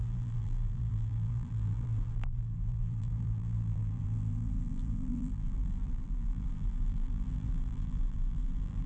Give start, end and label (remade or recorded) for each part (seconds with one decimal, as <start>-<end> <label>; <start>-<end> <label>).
0.0-8.9 remade